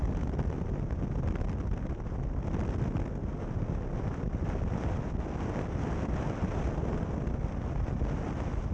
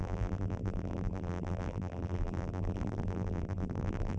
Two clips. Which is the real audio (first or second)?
first